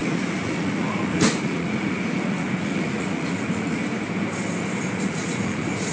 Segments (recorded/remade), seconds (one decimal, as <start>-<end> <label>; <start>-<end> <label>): 0.0-3.8 remade; 3.8-4.9 recorded; 4.9-5.9 remade